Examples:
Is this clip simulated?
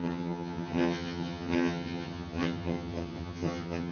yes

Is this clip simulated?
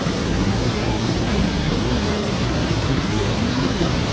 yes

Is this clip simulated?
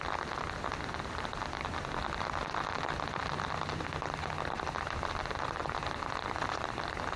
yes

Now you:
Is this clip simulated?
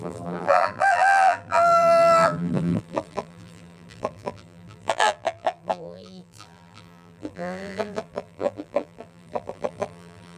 yes